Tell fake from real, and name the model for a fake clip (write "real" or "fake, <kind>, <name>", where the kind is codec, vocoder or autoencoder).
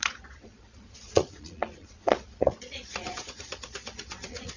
fake, vocoder, Vocos